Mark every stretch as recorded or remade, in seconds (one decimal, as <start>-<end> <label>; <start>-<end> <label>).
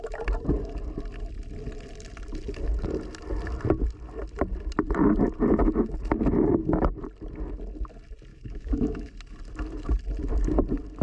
0.0-8.3 recorded; 8.3-9.1 remade; 9.1-11.0 recorded